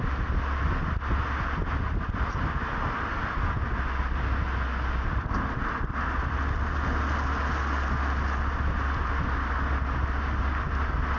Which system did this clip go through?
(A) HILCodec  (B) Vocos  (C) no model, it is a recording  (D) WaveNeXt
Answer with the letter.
C